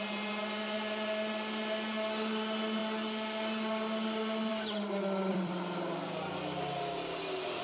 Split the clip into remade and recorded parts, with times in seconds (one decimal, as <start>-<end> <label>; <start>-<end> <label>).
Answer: 0.0-5.3 recorded; 5.3-6.2 remade; 6.2-7.6 recorded